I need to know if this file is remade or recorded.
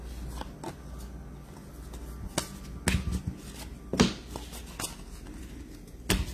recorded